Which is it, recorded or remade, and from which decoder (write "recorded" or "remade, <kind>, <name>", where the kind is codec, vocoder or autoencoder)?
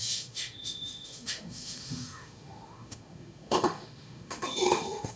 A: remade, autoencoder, DAC-VAE